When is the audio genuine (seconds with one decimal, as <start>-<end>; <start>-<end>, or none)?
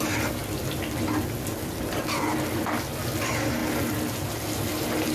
0.0-5.1